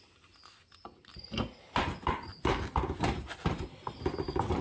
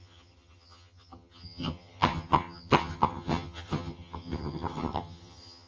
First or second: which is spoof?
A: second